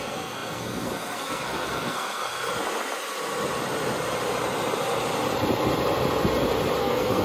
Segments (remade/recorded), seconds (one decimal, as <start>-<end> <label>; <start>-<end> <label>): 0.0-2.5 remade; 2.5-6.8 recorded; 6.8-7.2 remade